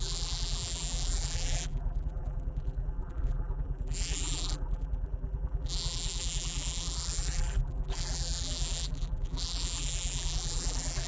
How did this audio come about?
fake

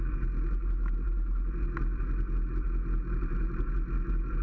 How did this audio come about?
real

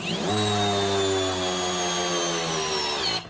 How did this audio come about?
real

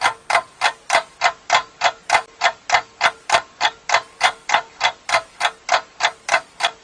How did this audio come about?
real